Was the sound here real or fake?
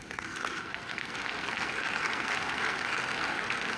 fake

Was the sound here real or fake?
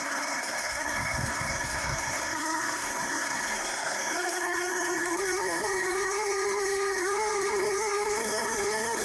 fake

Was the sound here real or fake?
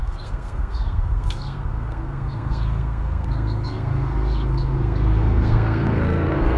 fake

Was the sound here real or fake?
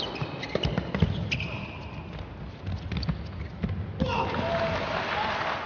real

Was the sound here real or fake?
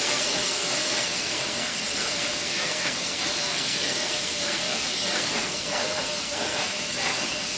fake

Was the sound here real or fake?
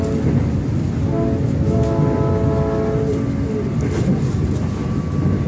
real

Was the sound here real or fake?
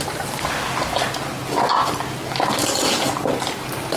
real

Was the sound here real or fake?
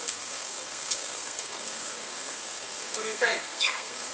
fake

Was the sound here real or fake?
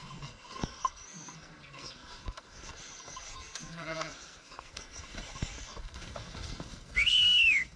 fake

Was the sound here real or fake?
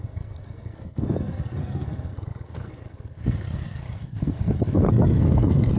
fake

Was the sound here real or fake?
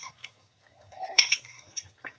fake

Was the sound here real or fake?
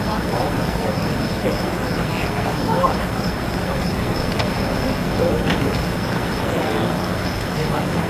fake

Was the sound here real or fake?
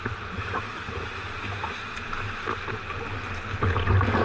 real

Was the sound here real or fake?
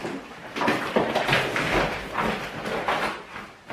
real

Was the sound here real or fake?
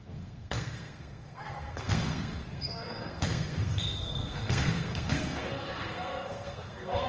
fake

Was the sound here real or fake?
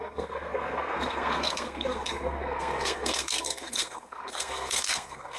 fake